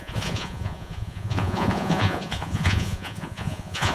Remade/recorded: remade